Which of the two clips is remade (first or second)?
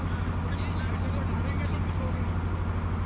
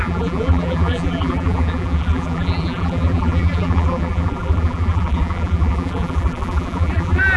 second